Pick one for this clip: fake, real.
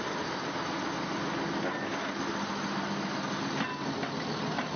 real